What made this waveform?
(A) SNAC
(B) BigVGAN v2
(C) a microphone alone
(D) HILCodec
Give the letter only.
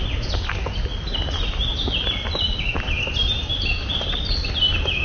C